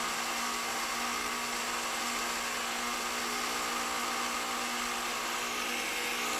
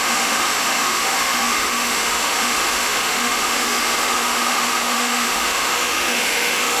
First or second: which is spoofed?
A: second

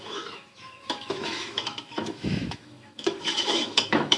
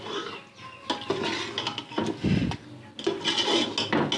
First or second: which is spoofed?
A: first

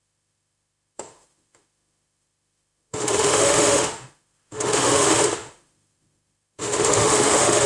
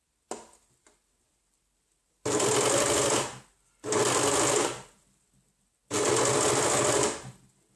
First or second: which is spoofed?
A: first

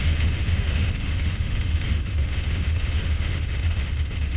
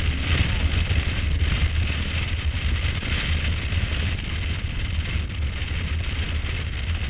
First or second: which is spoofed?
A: first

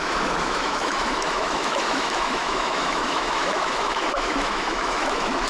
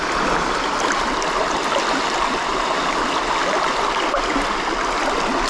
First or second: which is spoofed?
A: first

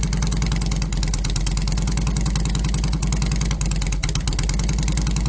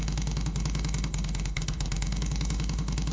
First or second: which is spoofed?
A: second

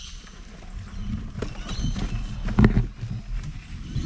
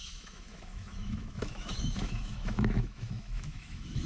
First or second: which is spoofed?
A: second